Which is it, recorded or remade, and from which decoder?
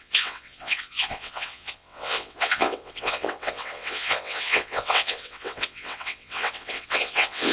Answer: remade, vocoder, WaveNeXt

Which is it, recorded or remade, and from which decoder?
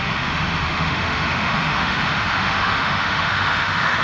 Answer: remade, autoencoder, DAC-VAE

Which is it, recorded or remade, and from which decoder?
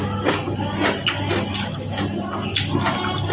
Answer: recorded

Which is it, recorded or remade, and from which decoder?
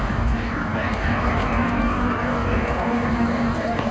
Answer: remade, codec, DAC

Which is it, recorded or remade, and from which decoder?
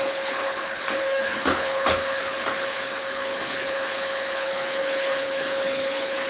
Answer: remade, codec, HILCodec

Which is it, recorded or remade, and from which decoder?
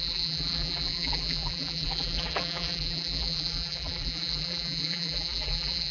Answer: remade, vocoder, BigVGAN v2